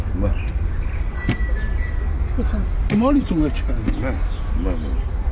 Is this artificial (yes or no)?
no